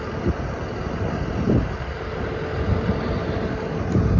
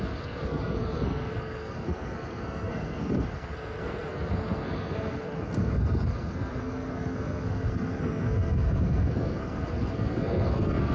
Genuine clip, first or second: first